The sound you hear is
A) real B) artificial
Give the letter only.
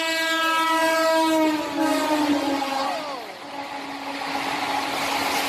A